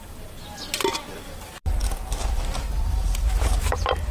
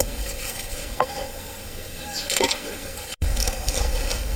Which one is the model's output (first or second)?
second